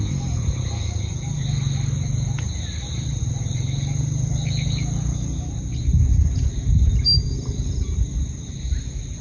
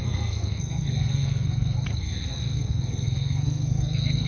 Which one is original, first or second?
first